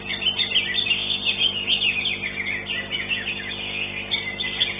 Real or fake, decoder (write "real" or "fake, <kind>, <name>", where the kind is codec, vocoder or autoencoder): real